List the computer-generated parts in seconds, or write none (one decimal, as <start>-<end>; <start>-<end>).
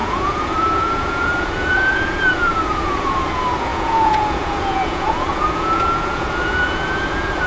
0.0-7.5